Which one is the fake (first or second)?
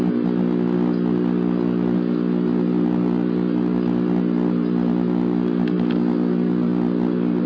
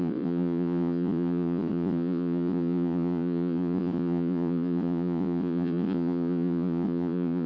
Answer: second